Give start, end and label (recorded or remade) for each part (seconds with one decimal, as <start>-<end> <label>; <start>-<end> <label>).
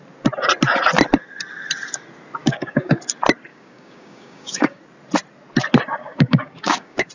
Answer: 0.0-2.4 recorded; 2.4-3.0 remade; 3.0-3.5 recorded; 3.5-4.8 remade; 4.8-6.0 recorded; 6.0-7.1 remade